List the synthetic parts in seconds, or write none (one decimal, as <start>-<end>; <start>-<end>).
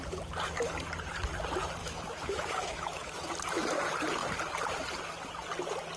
1.8-3.3